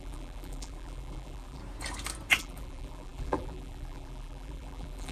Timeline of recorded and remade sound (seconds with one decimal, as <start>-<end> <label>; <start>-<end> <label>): 0.0-1.6 remade; 1.6-2.4 recorded; 2.4-5.1 remade